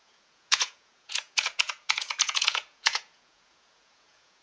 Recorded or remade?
remade